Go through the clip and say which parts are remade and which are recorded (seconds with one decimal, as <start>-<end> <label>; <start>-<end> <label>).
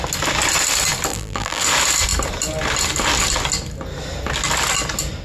0.0-1.1 recorded; 1.1-1.6 remade; 1.6-5.2 recorded